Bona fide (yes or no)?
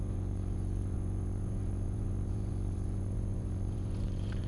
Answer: no